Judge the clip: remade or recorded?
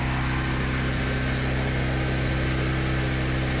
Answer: recorded